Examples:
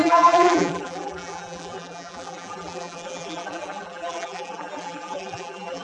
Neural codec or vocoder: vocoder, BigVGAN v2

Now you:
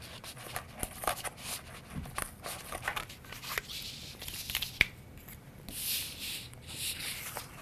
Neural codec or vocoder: none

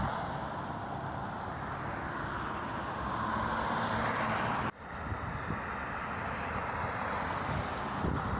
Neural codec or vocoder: none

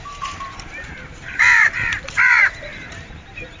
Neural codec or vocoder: vocoder, BigVGAN v2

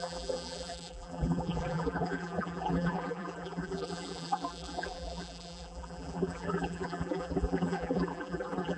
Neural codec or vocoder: vocoder, BigVGAN v2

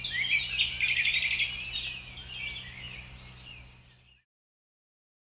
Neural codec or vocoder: none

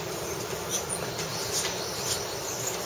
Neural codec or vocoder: none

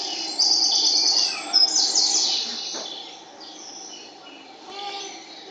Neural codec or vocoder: vocoder, BigVGAN v2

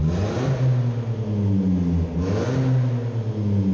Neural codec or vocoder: none